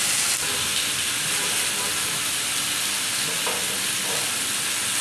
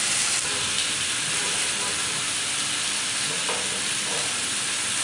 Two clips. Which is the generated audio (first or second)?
second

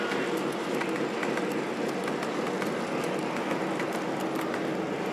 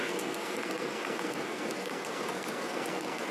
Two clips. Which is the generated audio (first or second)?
second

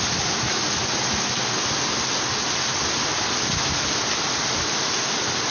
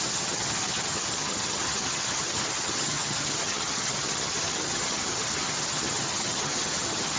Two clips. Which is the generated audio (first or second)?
second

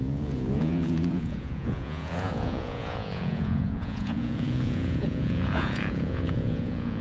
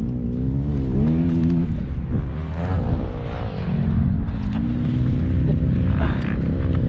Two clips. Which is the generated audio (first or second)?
first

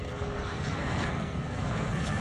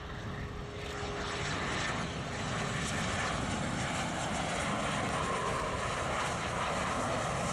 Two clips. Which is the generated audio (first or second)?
first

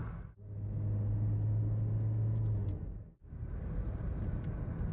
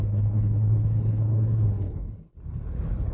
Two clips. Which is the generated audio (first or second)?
second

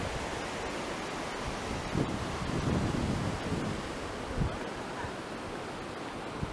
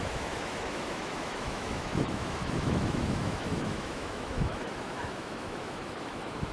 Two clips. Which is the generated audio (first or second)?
second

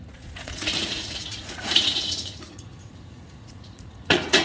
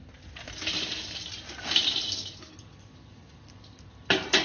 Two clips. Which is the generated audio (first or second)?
first